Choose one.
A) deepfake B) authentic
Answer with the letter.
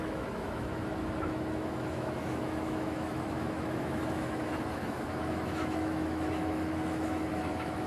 A